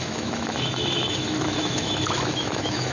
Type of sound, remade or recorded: remade